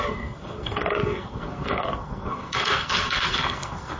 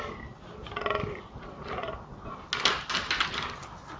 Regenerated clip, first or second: first